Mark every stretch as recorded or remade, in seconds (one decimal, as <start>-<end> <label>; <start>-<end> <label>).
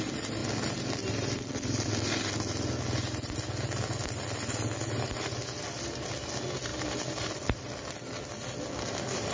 0.0-9.3 recorded